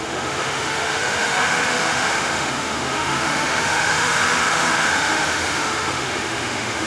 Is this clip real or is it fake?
fake